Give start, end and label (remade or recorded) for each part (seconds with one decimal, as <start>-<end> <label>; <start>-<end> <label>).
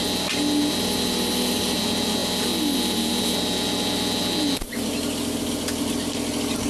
0.0-6.7 recorded